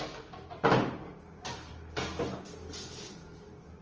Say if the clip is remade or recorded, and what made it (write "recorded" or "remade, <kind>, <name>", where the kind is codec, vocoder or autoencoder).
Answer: recorded